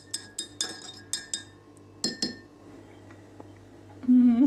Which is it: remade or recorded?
recorded